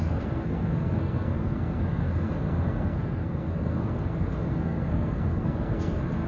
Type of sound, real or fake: fake